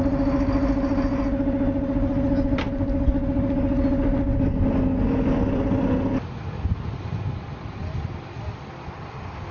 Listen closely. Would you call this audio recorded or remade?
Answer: recorded